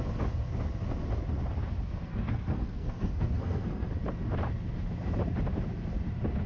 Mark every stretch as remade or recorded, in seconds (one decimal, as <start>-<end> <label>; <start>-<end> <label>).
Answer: 0.0-2.0 recorded; 2.0-3.9 remade; 3.9-6.5 recorded